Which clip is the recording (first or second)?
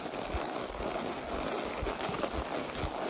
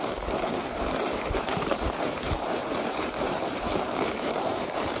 first